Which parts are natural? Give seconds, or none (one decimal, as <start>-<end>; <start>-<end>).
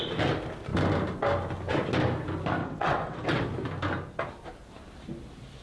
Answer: 0.0-2.6; 3.4-5.6